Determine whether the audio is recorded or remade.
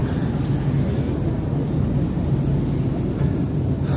recorded